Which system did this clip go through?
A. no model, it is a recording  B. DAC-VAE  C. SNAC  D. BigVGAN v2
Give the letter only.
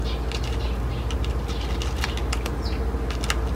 A